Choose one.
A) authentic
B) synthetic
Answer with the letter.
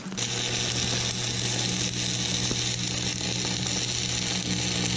A